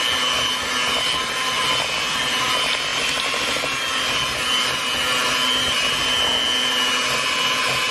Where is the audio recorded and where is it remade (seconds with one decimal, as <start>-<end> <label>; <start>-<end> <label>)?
0.0-7.9 recorded